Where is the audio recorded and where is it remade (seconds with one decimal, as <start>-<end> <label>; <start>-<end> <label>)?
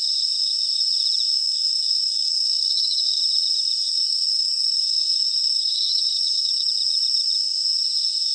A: 0.0-1.4 recorded; 1.4-3.2 remade; 3.2-3.8 recorded; 3.8-6.7 remade; 6.7-8.3 recorded